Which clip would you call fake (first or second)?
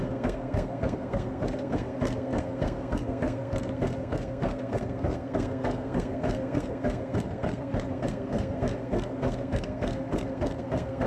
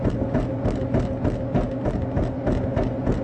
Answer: first